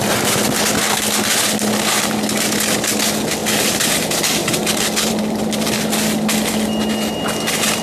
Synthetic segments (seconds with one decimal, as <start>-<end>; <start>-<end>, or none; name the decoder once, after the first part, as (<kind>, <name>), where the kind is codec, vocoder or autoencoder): none